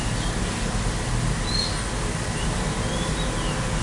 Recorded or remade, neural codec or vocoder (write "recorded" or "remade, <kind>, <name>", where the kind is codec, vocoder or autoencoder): recorded